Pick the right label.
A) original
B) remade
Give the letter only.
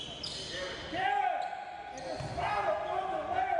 A